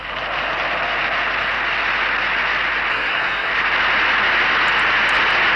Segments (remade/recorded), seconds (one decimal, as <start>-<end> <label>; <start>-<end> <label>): 0.0-2.9 recorded; 2.9-3.5 remade; 3.5-5.6 recorded